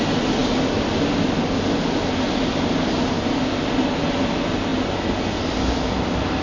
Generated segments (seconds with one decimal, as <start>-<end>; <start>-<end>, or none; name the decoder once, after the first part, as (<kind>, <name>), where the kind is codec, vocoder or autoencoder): none